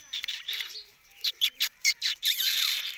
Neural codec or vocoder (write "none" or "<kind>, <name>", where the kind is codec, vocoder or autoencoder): vocoder, BigVGAN v2